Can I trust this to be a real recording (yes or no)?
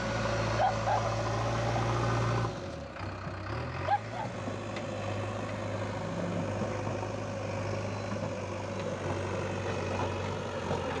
yes